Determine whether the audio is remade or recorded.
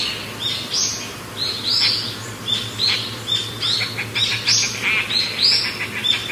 recorded